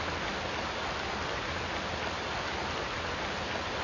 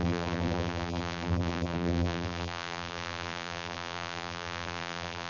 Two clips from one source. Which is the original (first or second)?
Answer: first